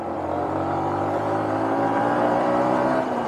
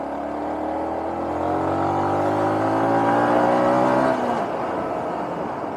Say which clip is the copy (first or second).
first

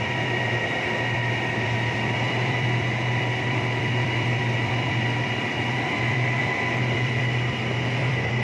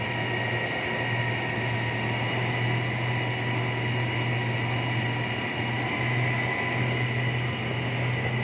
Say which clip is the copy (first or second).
first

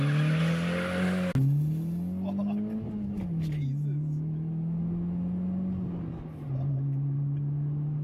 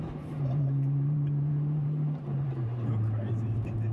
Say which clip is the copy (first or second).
second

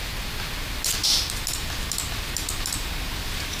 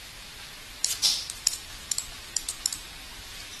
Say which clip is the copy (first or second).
second